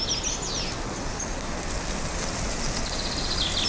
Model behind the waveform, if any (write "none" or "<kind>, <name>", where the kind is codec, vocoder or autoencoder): none